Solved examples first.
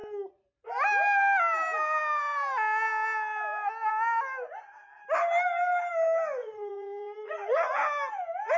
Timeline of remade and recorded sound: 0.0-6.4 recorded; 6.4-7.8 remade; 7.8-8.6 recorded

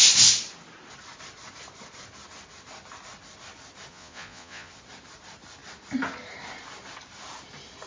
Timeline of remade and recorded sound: 0.0-3.9 recorded; 3.9-4.7 remade; 4.7-7.9 recorded

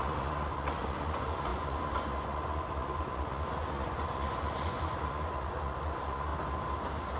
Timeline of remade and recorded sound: 0.0-6.3 remade; 6.3-7.2 recorded

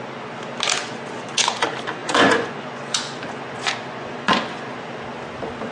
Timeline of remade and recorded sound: 0.0-0.8 recorded; 0.8-1.6 remade; 1.6-2.0 recorded; 2.0-4.8 remade; 4.8-5.7 recorded

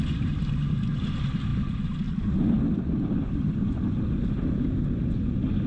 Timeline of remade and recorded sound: 0.0-5.7 recorded

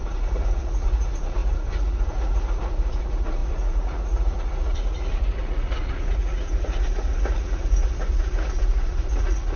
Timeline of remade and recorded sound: 0.0-9.6 remade

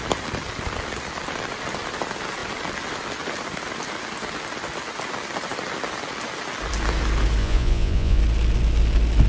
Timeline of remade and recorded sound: 0.0-7.4 recorded; 7.4-8.2 remade; 8.2-9.3 recorded

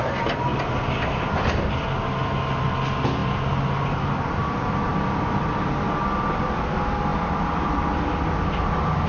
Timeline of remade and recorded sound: 0.0-9.1 recorded